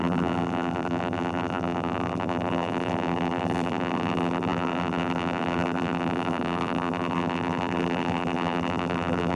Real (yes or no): no